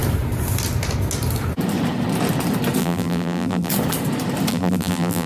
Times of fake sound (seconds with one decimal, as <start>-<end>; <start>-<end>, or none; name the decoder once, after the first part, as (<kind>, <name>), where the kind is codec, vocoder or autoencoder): 2.8-3.7 (vocoder, BigVGAN v2); 4.5-5.3